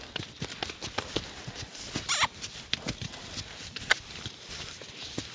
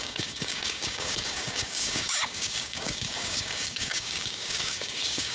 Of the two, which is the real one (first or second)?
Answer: first